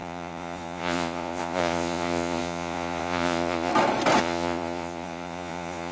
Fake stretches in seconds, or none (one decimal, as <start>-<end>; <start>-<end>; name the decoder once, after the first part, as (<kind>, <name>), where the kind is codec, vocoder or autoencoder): 0.0-3.7 (vocoder, Vocos); 4.2-5.9